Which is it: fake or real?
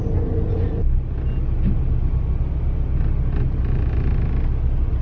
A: real